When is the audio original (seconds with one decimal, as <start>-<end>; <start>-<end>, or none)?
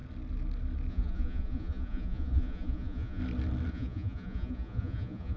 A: 0.0-0.9; 3.2-3.7